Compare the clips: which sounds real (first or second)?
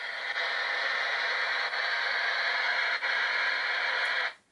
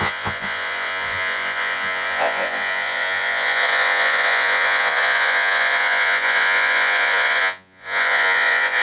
first